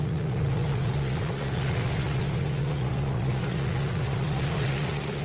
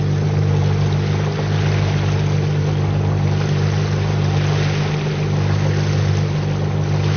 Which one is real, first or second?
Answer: second